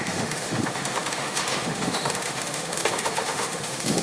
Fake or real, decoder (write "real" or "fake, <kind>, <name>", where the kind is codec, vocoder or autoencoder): fake, autoencoder, DAC-VAE